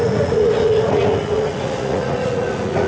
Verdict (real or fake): fake